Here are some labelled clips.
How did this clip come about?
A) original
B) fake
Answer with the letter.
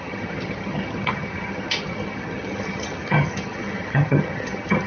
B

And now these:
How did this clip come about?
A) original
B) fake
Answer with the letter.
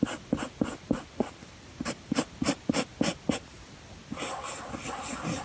A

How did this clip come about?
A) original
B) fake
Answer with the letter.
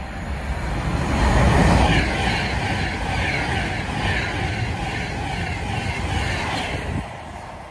A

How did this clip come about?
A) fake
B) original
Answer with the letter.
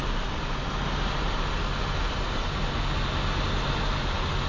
B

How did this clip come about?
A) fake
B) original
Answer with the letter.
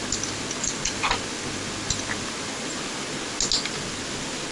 B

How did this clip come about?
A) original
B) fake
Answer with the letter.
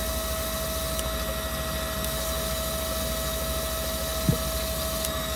A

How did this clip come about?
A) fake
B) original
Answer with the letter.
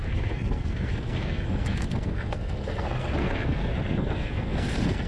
A